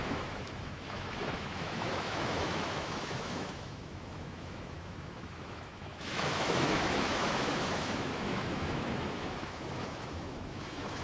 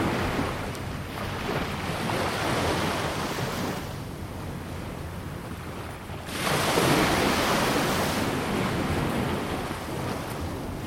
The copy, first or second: first